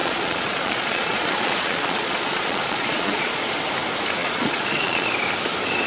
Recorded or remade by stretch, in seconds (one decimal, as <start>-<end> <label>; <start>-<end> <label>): 0.0-3.5 remade; 3.5-4.2 recorded; 4.2-5.1 remade; 5.1-5.9 recorded